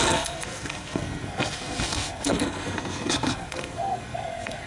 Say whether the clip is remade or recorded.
remade